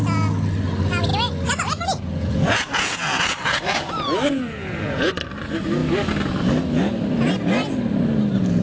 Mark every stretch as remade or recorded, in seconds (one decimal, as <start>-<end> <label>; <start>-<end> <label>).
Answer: 0.0-2.0 recorded; 2.0-5.1 remade; 5.1-8.6 recorded